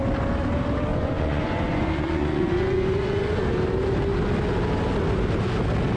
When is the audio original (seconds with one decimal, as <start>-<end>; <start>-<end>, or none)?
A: 0.0-0.9; 3.4-6.0